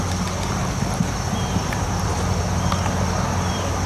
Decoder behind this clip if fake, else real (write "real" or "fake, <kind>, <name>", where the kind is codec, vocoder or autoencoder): real